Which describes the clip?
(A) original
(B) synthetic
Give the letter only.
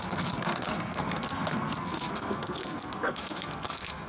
B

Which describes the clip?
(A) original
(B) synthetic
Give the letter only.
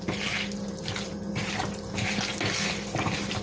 A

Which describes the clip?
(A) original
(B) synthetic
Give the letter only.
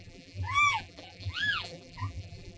B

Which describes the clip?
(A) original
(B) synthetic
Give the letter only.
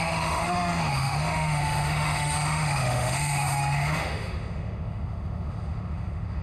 B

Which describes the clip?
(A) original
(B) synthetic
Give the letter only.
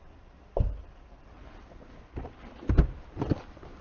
A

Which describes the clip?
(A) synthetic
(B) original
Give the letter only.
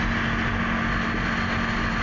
B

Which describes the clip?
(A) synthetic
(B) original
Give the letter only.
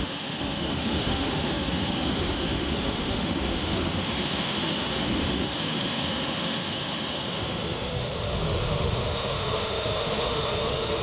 A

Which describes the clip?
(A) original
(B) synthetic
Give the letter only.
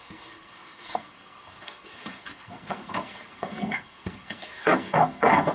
B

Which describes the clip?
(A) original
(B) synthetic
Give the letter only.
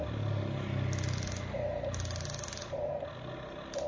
A